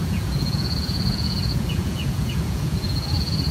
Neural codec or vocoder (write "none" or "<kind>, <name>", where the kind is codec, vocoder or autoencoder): vocoder, Vocos